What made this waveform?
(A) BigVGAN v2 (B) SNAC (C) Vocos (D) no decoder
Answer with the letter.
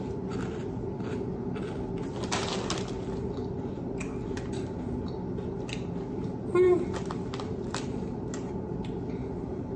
D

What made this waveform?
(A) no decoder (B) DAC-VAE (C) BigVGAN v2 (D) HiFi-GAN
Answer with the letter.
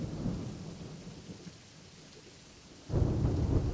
A